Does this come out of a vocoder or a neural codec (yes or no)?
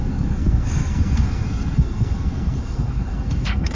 yes